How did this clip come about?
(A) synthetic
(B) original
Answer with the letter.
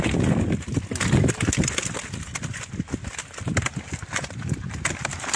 B